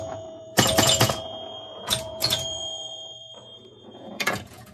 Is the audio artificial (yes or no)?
yes